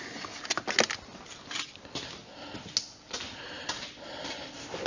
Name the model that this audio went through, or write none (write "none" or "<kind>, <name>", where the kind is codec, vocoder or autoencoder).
none